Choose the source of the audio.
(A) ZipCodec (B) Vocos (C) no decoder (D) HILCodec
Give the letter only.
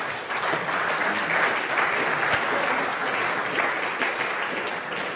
C